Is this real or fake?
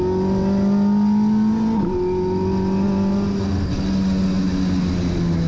real